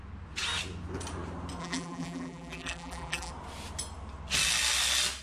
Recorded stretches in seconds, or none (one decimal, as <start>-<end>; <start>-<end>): 0.0-1.6; 3.3-5.2